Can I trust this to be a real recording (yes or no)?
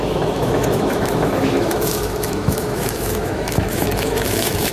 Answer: no